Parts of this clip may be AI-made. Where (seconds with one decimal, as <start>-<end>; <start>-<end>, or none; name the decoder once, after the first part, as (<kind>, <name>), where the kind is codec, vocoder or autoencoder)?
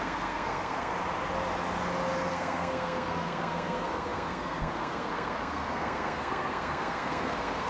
0.0-0.9 (codec, SNAC); 2.3-7.7